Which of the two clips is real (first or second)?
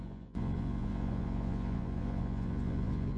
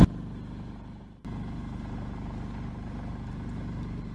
second